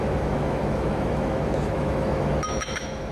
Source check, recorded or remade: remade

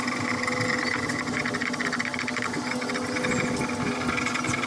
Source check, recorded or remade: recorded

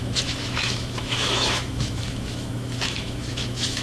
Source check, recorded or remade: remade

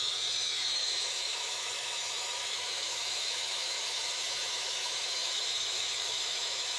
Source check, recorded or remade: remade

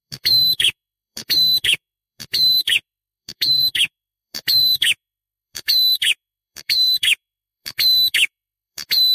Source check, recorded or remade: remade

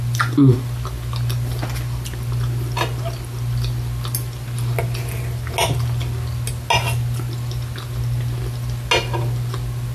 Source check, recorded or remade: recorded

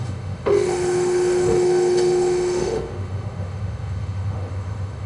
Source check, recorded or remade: remade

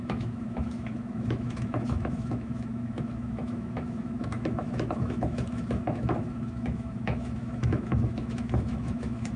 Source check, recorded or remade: remade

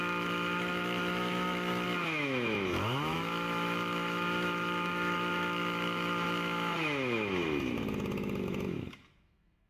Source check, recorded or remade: remade